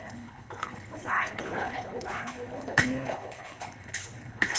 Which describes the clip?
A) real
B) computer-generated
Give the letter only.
B